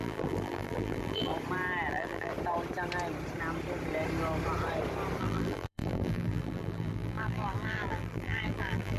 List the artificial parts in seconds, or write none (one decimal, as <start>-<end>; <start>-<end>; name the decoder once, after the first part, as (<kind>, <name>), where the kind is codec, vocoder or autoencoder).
0.0-1.3 (vocoder, BigVGAN v2); 1.9-2.3; 5.2-9.0